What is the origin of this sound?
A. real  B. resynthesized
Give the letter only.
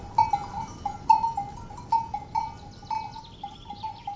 A